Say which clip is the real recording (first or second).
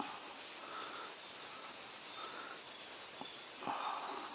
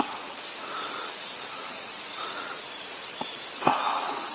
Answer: first